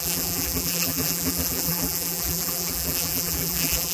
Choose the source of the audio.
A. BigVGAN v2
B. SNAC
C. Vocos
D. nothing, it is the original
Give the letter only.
A